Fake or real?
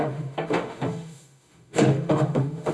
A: fake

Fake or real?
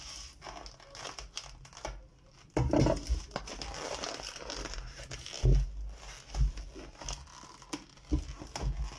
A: real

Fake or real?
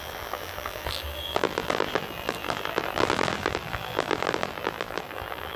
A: fake